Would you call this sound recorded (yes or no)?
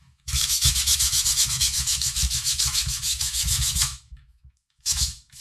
no